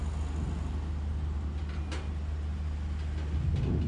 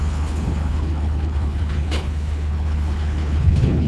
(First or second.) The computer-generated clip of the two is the second